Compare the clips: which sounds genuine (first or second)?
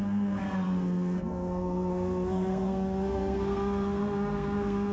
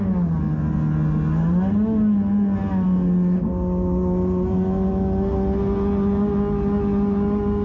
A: second